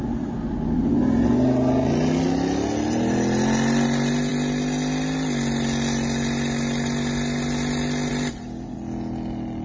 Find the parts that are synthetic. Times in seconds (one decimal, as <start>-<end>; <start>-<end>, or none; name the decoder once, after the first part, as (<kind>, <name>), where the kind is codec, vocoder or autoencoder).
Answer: none